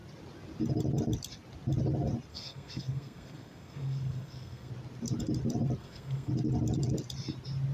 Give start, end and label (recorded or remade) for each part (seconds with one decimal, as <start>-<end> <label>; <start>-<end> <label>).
0.0-2.3 recorded; 2.3-4.7 remade; 4.7-5.8 recorded; 5.8-6.3 remade; 6.3-7.7 recorded